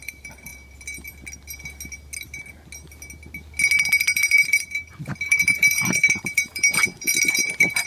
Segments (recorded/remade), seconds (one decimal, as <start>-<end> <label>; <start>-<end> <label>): 0.0-0.5 remade; 0.5-3.8 recorded; 3.8-7.9 remade